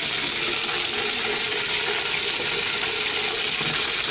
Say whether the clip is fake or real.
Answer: real